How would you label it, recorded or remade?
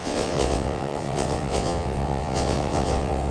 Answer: remade